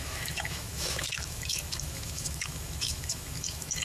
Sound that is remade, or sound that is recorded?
remade